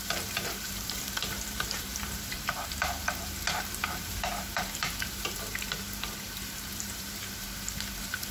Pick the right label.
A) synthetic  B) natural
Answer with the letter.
A